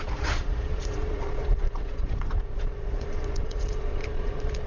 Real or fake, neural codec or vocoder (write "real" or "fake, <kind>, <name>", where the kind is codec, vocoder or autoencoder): fake, vocoder, Vocos